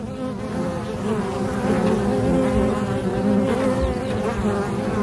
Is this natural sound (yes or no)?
yes